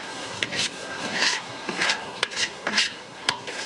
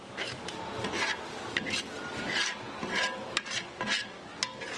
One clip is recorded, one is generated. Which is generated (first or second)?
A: first